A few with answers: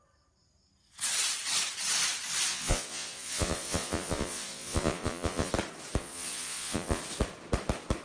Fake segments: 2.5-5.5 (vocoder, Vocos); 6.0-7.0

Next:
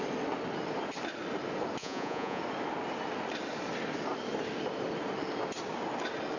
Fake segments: 1.8-2.4 (vocoder, Vocos)

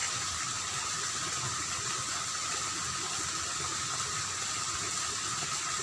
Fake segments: none

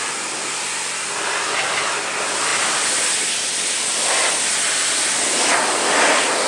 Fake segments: none

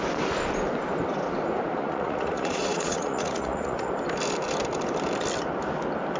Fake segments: 1.8-3.9 (vocoder, Vocos)

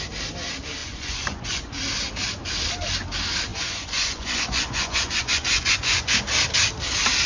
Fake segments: 0.8-1.7 (vocoder, Vocos); 3.5-6.1

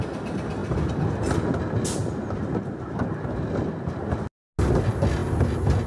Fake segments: none

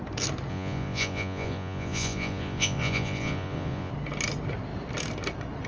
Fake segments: 0.5-3.9 (vocoder, Vocos)